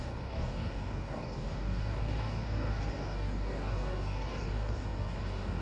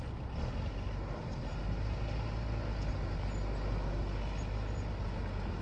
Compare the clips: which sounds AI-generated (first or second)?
first